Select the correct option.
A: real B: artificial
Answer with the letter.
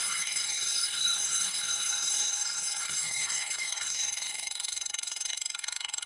B